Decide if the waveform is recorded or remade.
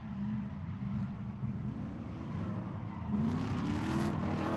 remade